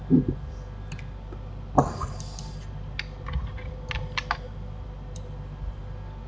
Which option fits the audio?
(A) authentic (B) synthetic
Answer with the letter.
A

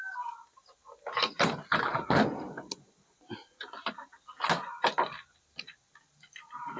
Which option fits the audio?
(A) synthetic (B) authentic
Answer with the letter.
B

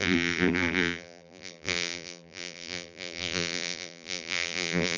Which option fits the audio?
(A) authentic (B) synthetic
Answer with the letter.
B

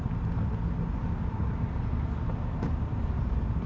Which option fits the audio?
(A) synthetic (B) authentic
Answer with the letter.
B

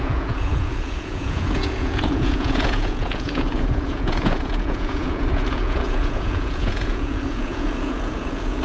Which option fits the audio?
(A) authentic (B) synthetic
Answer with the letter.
B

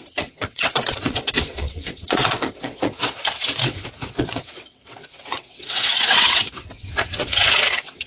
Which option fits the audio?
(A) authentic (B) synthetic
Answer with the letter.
B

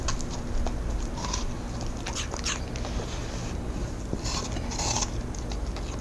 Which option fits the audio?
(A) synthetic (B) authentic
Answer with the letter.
B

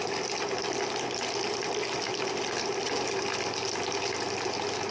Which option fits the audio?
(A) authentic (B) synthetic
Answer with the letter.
A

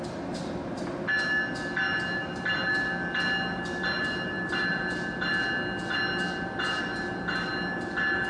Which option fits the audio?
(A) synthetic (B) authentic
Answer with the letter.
B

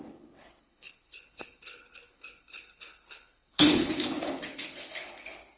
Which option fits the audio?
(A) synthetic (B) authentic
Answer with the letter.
A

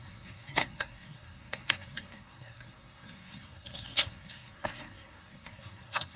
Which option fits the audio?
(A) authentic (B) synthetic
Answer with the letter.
B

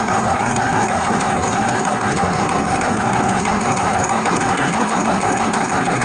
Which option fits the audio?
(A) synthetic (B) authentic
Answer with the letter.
A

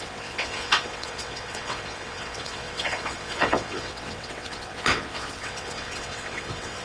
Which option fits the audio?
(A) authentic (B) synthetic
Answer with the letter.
B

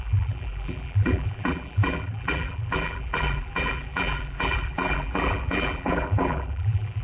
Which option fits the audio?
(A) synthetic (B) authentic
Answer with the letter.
A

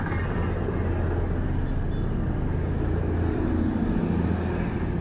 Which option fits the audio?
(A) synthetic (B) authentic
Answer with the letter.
B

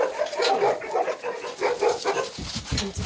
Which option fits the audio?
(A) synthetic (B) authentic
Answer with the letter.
B